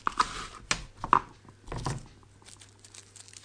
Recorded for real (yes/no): yes